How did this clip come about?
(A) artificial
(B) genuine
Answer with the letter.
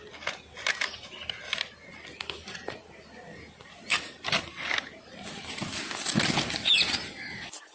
B